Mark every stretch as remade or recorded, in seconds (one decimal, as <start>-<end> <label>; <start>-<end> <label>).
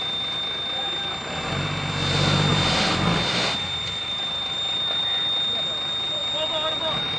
0.0-2.5 recorded; 2.5-5.2 remade; 5.2-7.2 recorded